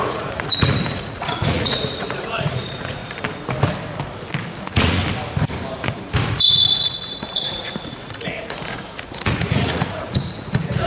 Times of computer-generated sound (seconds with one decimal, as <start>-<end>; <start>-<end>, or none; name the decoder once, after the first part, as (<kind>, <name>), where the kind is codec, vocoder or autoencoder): 0.0-3.0 (vocoder, Vocos); 4.6-5.0; 5.7-10.9